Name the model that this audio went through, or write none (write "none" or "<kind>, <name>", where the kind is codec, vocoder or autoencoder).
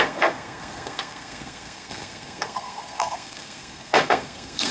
codec, SNAC